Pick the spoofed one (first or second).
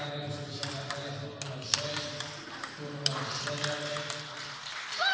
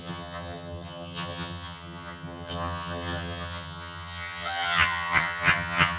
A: second